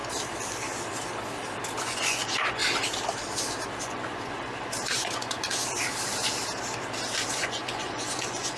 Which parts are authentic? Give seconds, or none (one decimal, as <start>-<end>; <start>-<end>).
0.0-1.8; 2.6-3.8; 5.6-7.3